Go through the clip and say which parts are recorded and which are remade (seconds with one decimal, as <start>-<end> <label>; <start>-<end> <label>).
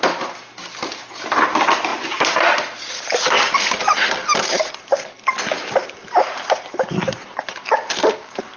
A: 0.0-8.6 recorded